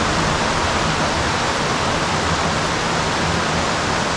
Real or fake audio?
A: real